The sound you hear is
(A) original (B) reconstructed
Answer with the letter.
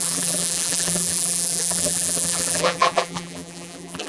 B